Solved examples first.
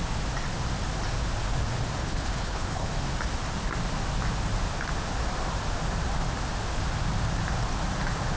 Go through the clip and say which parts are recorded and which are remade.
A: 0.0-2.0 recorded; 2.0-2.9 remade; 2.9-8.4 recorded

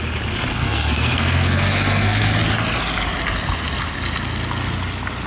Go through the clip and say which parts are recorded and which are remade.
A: 0.0-0.5 recorded; 0.5-2.2 remade; 2.2-5.3 recorded

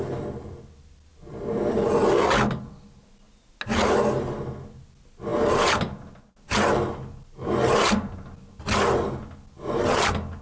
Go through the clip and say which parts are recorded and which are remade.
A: 0.0-10.4 recorded

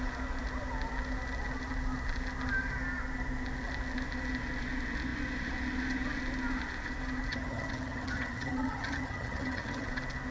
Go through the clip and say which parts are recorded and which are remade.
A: 0.0-7.3 recorded; 7.3-9.9 remade; 9.9-10.3 recorded

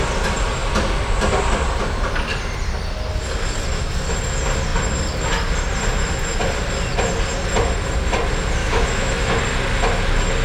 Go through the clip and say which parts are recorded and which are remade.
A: 0.0-8.6 recorded; 8.6-9.4 remade; 9.4-10.4 recorded

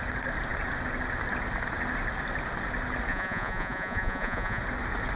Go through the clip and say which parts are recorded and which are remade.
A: 0.0-3.1 recorded; 3.1-4.6 remade; 4.6-5.2 recorded